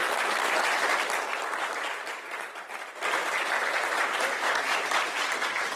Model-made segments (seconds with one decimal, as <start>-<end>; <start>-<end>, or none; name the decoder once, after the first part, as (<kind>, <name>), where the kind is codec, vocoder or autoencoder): 1.6-5.8 (vocoder, BigVGAN v2)